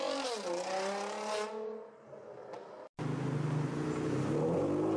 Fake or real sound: real